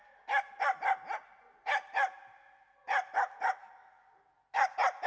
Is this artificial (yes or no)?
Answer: no